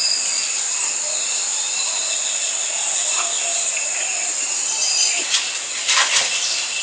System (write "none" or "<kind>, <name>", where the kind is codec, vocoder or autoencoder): none